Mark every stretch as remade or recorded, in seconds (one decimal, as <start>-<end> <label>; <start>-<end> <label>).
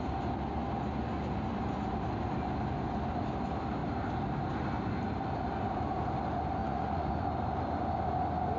0.0-6.6 recorded; 6.6-7.1 remade; 7.1-8.6 recorded